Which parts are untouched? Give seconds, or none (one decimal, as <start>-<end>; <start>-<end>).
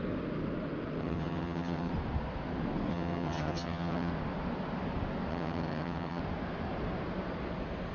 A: 0.0-1.0; 1.9-2.9; 4.1-5.3; 6.2-7.9